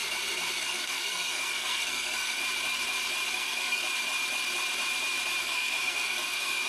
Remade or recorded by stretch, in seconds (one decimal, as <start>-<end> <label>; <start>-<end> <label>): 0.0-0.6 recorded; 0.6-2.4 remade; 2.4-3.3 recorded; 3.3-3.8 remade; 3.8-5.4 recorded; 5.4-6.7 remade